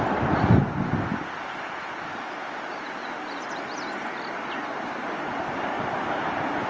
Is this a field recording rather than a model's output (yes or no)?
yes